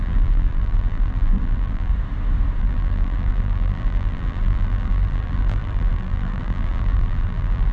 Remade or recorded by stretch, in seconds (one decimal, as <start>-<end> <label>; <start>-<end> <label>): 0.0-1.9 remade; 1.9-2.6 recorded; 2.6-7.7 remade